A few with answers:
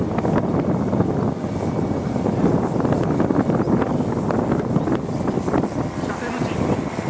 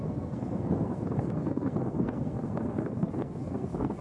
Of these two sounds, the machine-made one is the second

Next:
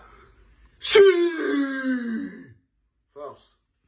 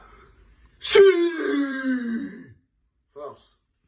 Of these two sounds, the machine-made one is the second